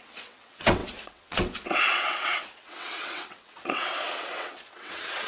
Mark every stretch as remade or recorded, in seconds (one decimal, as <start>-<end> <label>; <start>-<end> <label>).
0.0-5.3 remade